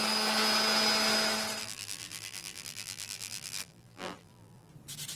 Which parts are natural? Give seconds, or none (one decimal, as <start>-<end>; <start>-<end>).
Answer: 0.0-1.6; 4.7-5.2

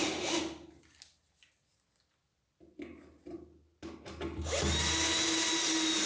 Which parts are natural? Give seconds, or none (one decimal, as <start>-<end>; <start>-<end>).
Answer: 0.0-6.1

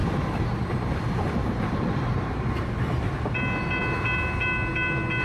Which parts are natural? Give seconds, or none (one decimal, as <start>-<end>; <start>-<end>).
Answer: 3.1-5.2

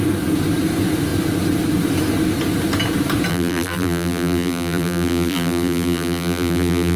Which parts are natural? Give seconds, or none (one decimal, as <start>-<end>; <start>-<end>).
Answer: 0.0-3.3

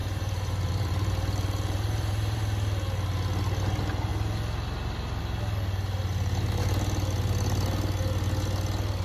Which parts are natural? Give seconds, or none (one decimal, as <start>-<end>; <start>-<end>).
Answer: 2.4-9.0

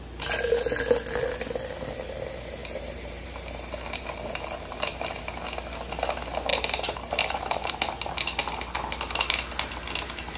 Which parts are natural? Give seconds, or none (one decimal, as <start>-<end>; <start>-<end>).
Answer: 0.0-2.6; 5.3-6.5; 7.7-10.4

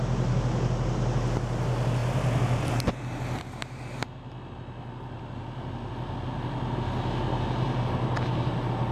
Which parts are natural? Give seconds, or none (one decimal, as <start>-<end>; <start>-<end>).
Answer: 0.0-2.0; 3.4-8.9

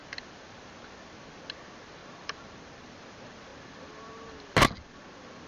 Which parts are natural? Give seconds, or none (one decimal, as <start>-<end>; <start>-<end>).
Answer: 0.0-2.0; 2.9-3.5; 4.2-5.5